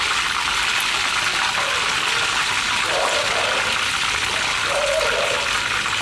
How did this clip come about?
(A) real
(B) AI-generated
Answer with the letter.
A